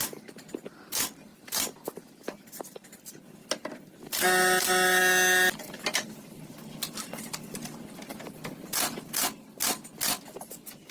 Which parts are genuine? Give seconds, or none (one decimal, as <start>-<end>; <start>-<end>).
0.0-10.9